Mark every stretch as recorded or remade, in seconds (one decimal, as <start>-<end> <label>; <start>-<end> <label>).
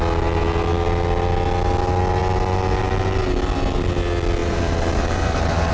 0.0-4.4 recorded; 4.4-5.7 remade